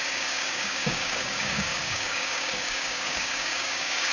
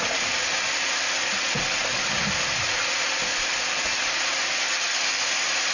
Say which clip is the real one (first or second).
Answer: second